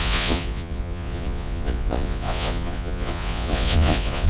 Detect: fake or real fake